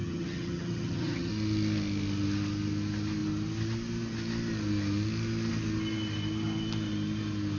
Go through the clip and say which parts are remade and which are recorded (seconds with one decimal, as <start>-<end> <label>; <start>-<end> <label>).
0.0-1.3 remade; 1.3-7.6 recorded